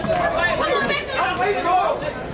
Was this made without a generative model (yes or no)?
yes